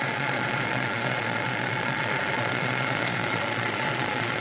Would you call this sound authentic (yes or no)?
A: no